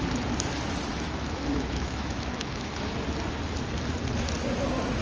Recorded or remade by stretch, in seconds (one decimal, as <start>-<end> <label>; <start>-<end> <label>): 0.0-0.9 recorded; 0.9-2.9 remade; 2.9-5.0 recorded